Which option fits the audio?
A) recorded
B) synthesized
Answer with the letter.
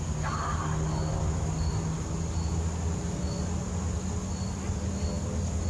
A